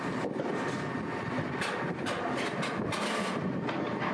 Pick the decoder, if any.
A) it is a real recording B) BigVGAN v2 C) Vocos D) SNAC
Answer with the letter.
A